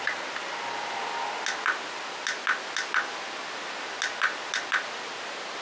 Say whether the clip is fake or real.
real